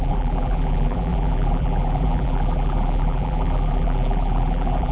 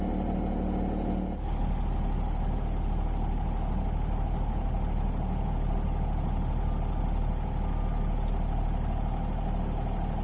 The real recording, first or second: second